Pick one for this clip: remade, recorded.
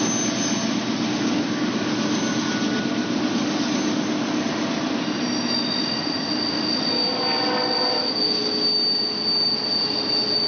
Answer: recorded